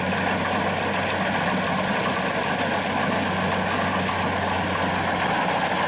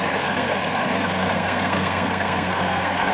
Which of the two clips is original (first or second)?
first